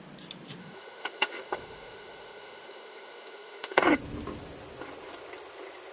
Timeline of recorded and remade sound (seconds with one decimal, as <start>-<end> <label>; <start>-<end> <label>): 0.0-0.6 recorded; 0.6-4.0 remade; 4.0-5.9 recorded